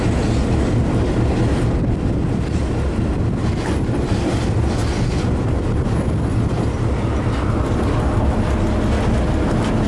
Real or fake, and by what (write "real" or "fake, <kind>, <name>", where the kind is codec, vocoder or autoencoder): real